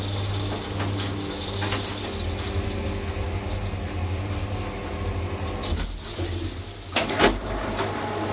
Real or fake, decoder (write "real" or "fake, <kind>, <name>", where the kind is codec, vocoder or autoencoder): real